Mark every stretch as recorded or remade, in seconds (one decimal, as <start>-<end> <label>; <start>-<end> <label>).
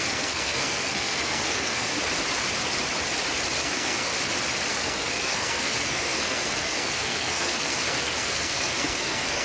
0.0-1.9 remade; 1.9-3.6 recorded; 3.6-4.1 remade; 4.1-4.7 recorded; 4.7-9.4 remade